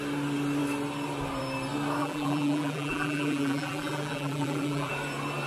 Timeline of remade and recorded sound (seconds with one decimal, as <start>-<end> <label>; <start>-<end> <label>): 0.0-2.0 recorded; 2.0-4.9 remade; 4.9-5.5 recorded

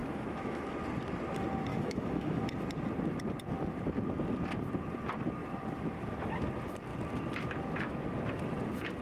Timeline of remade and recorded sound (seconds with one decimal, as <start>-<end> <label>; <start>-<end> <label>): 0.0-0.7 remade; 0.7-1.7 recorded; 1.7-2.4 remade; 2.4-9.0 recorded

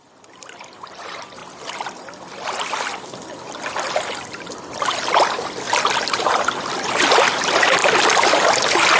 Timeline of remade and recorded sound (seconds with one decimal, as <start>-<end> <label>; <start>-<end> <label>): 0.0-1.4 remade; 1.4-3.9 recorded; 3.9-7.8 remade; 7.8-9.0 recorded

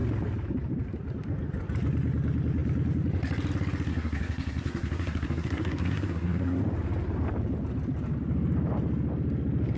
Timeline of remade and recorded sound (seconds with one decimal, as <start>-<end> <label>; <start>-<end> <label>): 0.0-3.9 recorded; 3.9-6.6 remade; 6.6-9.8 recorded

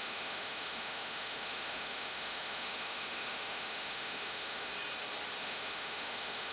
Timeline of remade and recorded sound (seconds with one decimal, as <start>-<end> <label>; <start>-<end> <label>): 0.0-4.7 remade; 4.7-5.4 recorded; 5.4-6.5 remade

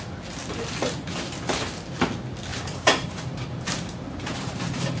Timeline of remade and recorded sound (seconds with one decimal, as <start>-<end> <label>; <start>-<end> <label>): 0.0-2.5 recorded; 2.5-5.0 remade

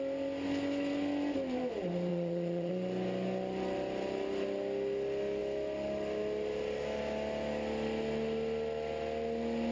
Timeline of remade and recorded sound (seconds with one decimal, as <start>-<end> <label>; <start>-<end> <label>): 0.0-2.1 recorded; 2.1-2.7 remade; 2.7-9.7 recorded

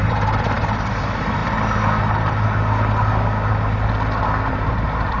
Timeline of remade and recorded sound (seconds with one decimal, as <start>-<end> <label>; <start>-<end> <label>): 0.0-1.4 remade; 1.4-4.5 recorded; 4.5-5.2 remade